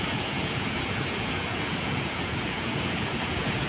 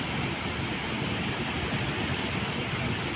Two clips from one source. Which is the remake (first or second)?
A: first